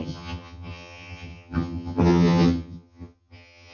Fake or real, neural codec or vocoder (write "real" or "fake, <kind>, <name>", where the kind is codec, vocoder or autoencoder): fake, vocoder, HiFi-GAN